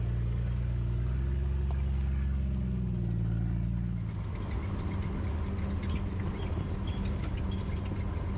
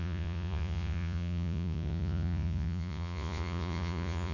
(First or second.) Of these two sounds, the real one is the first